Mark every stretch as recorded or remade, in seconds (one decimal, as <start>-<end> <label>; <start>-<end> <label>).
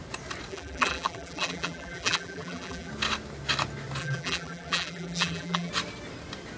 0.0-0.5 recorded; 0.5-2.9 remade; 2.9-4.0 recorded; 4.0-5.7 remade; 5.7-6.6 recorded